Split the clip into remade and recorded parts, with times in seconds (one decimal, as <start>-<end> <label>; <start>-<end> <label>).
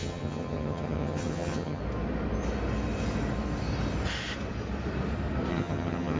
0.0-1.8 remade; 1.8-5.5 recorded; 5.5-6.2 remade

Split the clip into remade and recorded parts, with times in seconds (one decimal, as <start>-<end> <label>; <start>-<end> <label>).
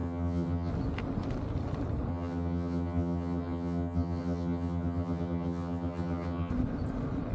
0.0-0.7 remade; 0.7-2.1 recorded; 2.1-6.5 remade; 6.5-7.3 recorded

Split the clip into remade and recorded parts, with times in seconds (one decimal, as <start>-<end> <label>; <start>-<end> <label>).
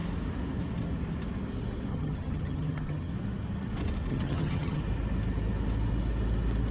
0.0-1.9 recorded; 1.9-3.1 remade; 3.1-4.1 recorded; 4.1-4.8 remade; 4.8-6.7 recorded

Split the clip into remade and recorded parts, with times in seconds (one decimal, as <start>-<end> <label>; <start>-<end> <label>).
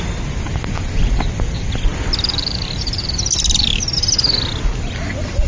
0.0-5.5 recorded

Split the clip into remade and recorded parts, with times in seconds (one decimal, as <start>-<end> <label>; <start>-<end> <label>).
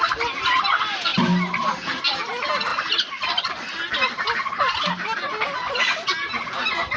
0.0-7.0 recorded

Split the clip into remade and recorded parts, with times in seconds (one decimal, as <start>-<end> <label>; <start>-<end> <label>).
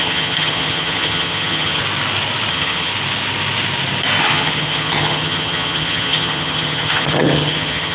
0.0-1.8 remade; 1.8-2.5 recorded; 2.5-2.9 remade; 2.9-4.2 recorded; 4.2-7.9 remade